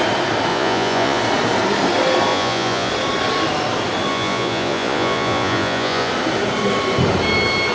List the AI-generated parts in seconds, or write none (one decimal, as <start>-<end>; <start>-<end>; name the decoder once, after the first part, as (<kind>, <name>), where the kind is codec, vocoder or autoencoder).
0.5-1.2 (vocoder, Vocos); 2.3-2.9; 4.1-6.1